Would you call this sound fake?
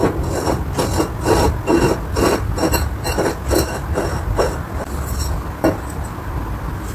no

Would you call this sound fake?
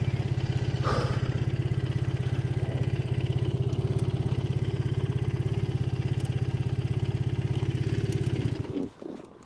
no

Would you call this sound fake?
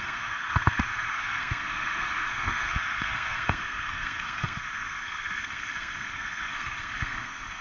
yes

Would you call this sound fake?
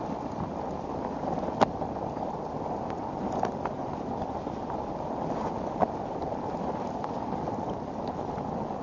no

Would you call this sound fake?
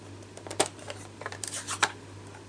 no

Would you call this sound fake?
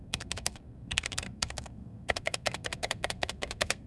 yes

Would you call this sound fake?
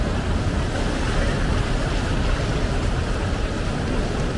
no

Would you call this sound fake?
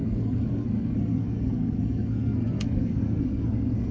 yes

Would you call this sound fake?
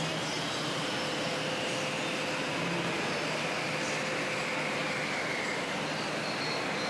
no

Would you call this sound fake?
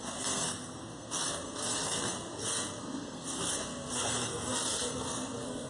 yes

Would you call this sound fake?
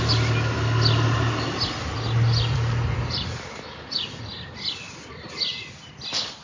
no